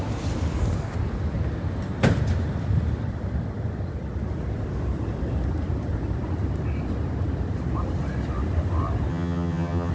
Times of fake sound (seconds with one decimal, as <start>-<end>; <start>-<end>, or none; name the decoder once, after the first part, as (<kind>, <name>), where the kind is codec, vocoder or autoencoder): 9.1-9.9 (vocoder, HiFi-GAN)

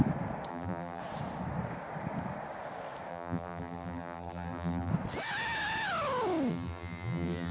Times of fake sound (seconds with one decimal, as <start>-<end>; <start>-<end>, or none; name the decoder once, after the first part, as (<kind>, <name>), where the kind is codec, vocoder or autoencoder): 0.5-1.0 (vocoder, BigVGAN v2); 3.1-4.9; 6.5-7.5

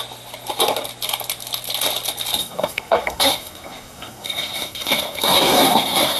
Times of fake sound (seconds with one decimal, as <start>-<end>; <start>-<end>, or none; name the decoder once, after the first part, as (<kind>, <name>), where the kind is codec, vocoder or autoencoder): 2.4-6.2 (codec, SNAC)